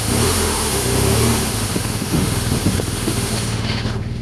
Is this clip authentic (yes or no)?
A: no